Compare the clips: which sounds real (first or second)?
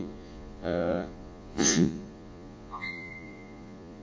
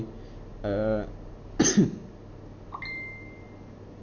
second